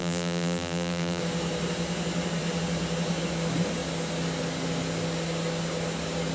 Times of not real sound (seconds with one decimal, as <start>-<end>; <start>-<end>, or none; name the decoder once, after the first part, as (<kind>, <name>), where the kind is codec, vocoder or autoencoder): 0.0-1.2 (vocoder, BigVGAN v2)

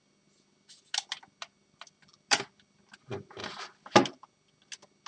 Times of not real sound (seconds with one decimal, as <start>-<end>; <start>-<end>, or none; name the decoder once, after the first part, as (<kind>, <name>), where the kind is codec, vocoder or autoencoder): none

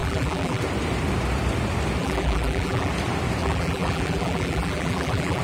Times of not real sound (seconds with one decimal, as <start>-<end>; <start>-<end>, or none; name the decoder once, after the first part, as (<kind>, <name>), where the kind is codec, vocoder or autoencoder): 0.0-0.6 (vocoder, BigVGAN v2); 2.0-2.9; 3.4-5.4

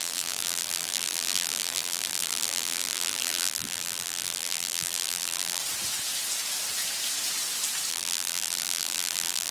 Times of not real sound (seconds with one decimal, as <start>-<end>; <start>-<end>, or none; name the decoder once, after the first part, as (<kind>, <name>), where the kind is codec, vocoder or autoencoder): 0.0-5.6 (vocoder, BigVGAN v2); 7.9-9.5

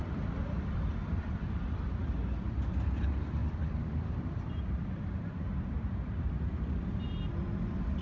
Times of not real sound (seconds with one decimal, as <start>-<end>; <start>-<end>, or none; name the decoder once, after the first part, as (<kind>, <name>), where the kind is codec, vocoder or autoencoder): 0.0-1.4 (vocoder, BigVGAN v2); 2.4-8.0

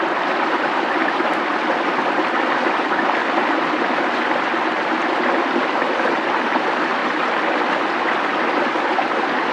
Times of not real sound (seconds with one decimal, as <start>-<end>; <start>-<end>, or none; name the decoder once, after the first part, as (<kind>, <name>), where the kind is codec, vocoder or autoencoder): 0.0-3.2 (vocoder, BigVGAN v2); 5.4-7.0

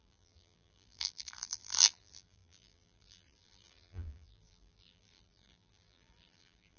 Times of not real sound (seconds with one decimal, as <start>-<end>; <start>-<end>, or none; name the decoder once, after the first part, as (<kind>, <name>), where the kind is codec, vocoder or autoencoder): 0.0-6.8 (vocoder, BigVGAN v2)